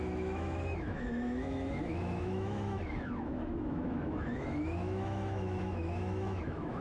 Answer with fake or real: fake